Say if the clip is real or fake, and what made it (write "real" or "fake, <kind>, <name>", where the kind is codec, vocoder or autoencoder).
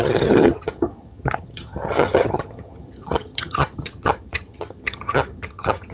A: fake, vocoder, HiFi-GAN